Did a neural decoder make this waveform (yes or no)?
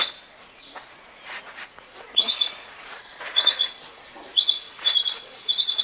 yes